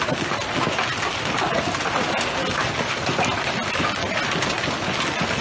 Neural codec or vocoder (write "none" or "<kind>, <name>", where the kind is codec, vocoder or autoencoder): none